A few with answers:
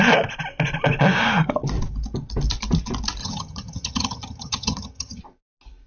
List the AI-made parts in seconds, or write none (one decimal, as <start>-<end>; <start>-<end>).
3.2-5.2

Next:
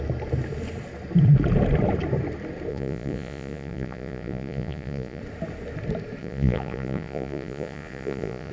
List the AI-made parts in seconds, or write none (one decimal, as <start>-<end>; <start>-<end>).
2.7-5.2; 6.2-8.5

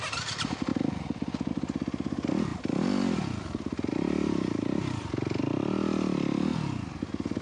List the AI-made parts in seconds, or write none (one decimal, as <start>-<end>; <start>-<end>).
2.5-5.4